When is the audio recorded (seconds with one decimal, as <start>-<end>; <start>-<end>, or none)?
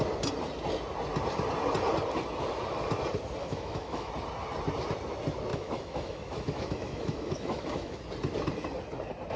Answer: 0.0-3.4; 4.1-5.5; 8.0-9.4